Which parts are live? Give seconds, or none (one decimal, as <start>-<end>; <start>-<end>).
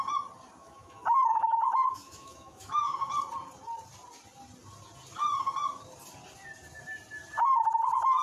0.0-0.6; 3.1-8.2